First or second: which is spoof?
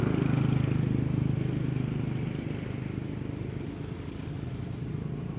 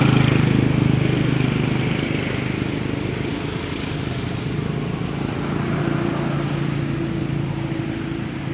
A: first